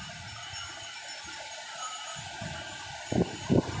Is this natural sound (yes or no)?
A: yes